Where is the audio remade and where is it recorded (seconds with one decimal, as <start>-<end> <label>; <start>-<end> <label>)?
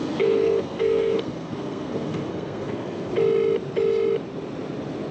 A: 0.0-3.1 remade; 3.1-5.1 recorded